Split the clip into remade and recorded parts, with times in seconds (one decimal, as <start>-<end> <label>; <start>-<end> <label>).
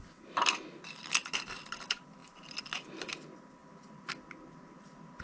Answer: 0.0-5.2 recorded